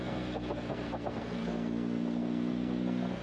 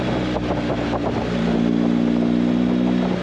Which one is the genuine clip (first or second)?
second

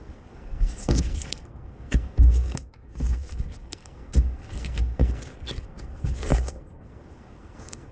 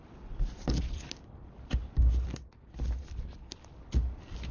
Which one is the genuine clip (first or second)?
second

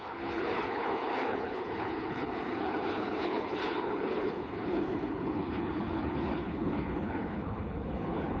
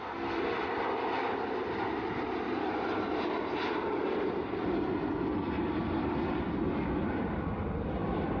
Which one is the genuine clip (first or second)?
second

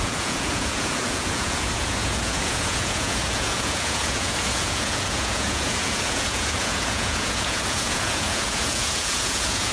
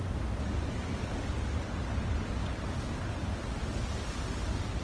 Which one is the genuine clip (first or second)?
second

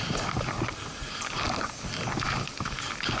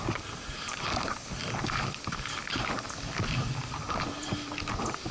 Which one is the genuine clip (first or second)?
first